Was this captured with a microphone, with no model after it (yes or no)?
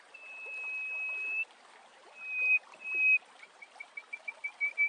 yes